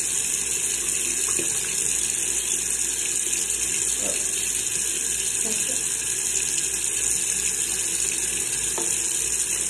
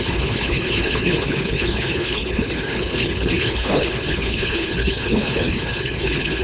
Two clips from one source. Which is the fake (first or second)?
second